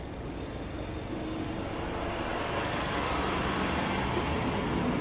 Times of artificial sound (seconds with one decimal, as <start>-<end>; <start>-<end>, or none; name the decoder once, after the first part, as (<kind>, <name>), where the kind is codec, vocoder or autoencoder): none